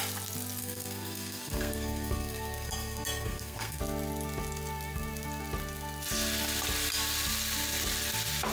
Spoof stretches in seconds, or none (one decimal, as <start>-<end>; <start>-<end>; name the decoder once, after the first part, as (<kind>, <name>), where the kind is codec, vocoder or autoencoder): 0.6-3.8 (codec, SNAC)